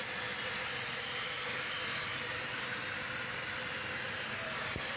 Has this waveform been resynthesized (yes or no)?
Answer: no